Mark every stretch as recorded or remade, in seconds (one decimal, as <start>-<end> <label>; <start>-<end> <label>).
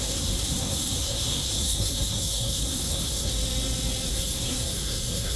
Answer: 0.0-3.3 remade; 3.3-4.1 recorded; 4.1-5.4 remade